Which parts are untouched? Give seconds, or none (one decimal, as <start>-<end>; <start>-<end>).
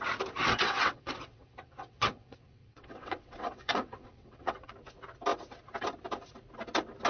0.0-0.4; 4.7-7.1